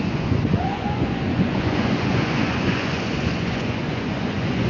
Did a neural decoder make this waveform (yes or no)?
yes